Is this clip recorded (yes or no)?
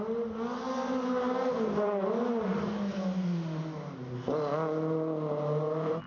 yes